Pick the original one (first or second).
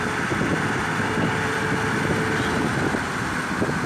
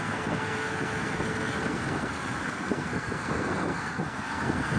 first